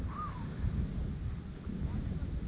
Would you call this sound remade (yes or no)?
no